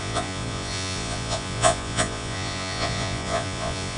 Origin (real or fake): fake